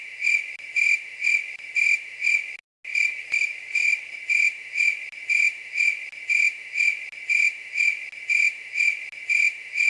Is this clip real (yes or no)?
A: yes